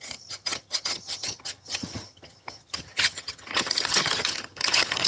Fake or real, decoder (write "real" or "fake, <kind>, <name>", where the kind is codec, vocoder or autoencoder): fake, vocoder, HiFi-GAN